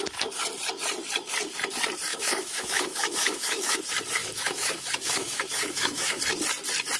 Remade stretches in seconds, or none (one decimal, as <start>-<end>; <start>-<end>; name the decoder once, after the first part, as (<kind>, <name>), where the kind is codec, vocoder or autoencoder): 2.1-3.8 (autoencoder, DAC-VAE); 4.2-6.2